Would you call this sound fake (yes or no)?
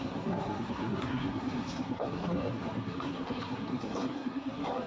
yes